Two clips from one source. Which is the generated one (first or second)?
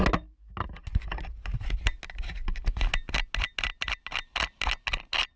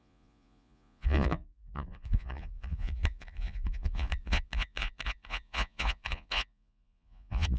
second